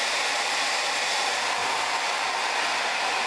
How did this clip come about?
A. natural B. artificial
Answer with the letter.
B